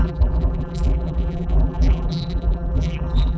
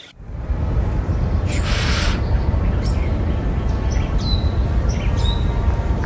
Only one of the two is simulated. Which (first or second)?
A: first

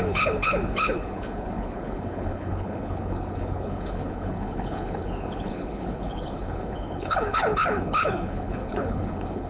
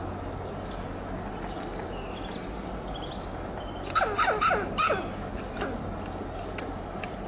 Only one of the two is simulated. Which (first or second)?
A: first